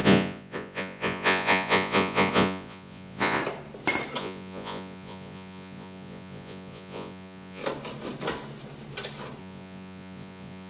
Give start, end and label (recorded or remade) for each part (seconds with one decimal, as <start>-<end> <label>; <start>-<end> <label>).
0.0-3.4 remade; 3.4-4.2 recorded; 4.2-7.6 remade; 7.6-9.4 recorded; 9.4-10.7 remade